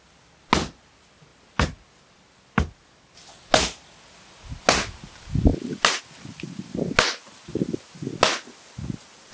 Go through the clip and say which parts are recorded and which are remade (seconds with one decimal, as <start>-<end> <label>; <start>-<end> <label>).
0.0-9.3 recorded